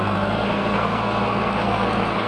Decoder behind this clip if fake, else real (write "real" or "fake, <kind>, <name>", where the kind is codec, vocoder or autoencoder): fake, codec, SNAC